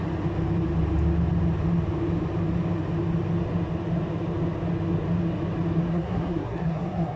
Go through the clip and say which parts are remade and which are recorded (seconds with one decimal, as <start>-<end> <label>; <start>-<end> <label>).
0.0-5.9 recorded; 5.9-7.2 remade